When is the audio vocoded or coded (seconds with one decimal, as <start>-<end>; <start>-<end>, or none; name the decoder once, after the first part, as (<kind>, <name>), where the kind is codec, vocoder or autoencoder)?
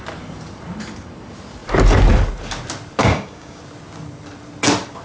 3.0-3.6 (codec, DAC)